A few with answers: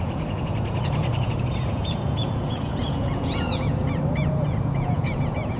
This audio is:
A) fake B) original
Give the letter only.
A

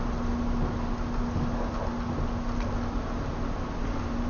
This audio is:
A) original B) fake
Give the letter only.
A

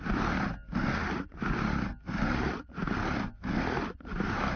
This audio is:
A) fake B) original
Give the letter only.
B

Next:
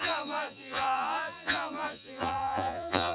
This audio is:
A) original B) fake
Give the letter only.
B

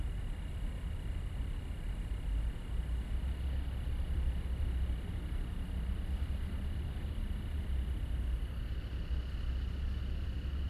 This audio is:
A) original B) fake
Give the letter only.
A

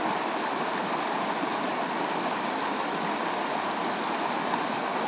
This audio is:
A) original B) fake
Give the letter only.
A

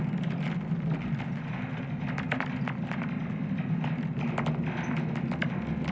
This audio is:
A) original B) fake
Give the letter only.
A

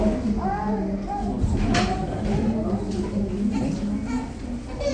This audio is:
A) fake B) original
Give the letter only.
B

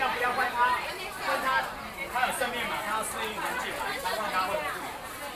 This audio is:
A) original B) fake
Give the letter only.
A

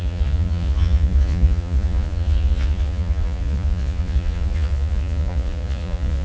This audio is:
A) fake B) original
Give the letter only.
A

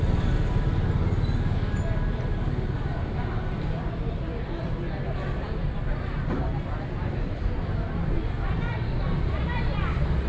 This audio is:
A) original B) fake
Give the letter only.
A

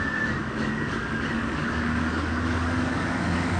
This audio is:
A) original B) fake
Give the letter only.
B